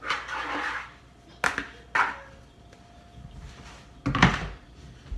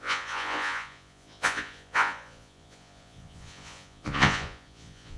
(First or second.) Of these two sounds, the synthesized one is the second